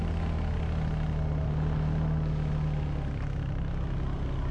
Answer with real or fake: real